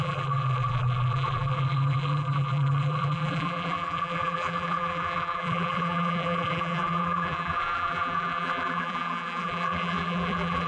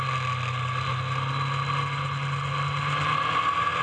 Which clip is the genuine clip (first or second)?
second